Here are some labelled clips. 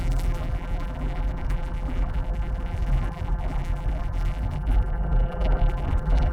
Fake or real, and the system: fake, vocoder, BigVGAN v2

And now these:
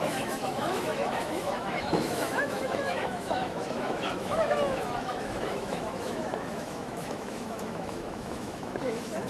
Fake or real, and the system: fake, autoencoder, DAC-VAE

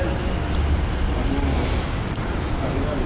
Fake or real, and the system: real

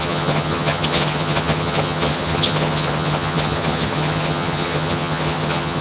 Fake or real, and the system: fake, vocoder, HiFi-GAN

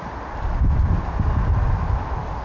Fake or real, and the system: real